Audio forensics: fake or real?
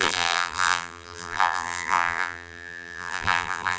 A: fake